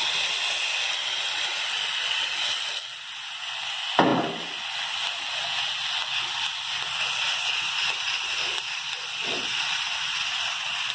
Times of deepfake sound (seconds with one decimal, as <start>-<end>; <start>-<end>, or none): none